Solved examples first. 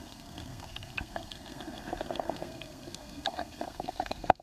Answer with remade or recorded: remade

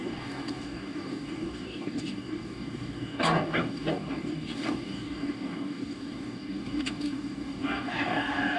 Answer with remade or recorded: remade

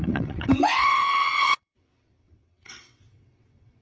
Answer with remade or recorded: remade